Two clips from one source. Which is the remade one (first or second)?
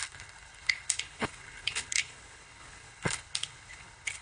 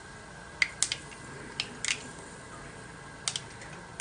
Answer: first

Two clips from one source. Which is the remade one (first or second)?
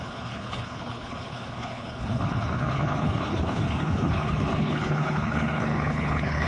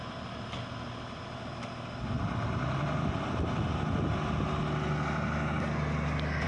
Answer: first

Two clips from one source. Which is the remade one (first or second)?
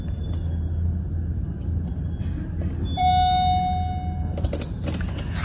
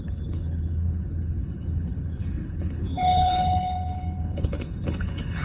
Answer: second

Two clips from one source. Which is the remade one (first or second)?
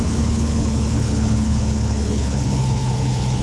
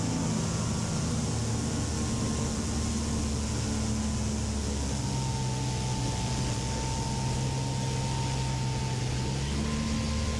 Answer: first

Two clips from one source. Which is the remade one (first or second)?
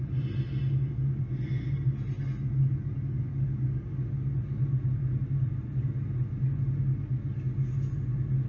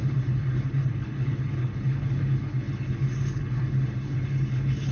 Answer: second